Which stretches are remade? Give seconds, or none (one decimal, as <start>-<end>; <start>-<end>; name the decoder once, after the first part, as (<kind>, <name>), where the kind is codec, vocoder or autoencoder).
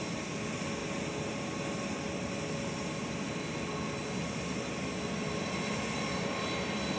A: 0.0-0.8 (vocoder, BigVGAN v2); 4.7-7.0